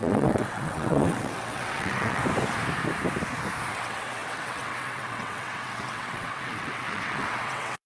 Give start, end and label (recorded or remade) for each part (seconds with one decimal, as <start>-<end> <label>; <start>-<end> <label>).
0.0-2.2 remade; 2.2-3.7 recorded; 3.7-7.9 remade

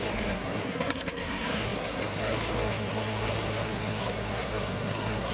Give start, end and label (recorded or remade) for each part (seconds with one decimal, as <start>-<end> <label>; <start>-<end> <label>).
0.0-5.3 remade